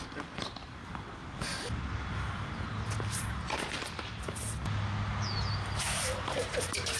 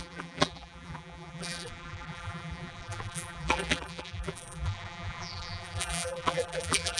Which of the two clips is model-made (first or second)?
second